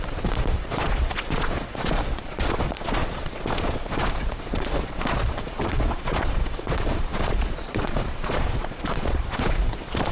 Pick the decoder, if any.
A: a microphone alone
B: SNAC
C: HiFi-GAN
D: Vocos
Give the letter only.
D